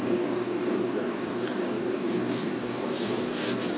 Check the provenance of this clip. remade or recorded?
remade